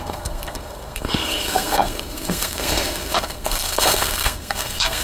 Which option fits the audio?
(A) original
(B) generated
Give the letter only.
B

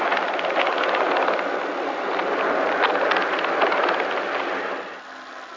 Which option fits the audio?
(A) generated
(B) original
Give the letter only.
B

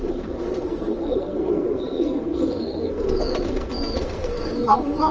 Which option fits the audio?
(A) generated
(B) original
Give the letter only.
A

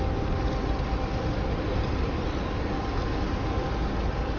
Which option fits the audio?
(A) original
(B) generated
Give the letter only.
A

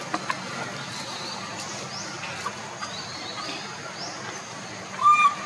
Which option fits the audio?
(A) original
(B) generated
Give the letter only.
A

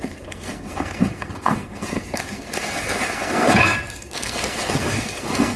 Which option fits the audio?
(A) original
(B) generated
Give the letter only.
B